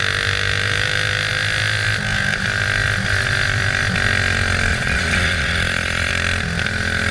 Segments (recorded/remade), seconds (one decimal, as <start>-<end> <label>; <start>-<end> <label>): 0.0-4.7 recorded; 4.7-6.1 remade; 6.1-7.1 recorded